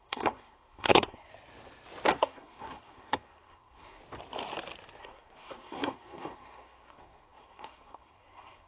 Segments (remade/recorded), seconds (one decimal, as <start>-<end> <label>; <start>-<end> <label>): 0.0-1.3 remade; 1.3-2.1 recorded; 2.1-4.0 remade; 4.0-5.0 recorded; 5.0-8.7 remade